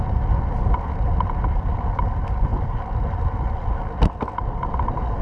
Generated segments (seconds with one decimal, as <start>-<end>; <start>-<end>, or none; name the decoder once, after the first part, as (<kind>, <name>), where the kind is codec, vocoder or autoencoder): none